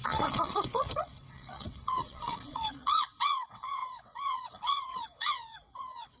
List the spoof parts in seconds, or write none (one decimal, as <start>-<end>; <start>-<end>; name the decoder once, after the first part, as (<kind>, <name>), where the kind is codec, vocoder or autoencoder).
0.0-6.2 (vocoder, WaveNeXt)